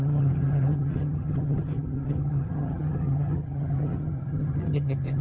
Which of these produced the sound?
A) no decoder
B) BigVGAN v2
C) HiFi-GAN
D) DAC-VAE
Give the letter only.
C